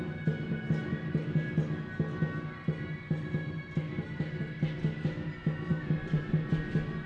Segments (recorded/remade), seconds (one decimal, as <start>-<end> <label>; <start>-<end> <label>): 0.0-5.7 recorded; 5.7-6.3 remade; 6.3-7.1 recorded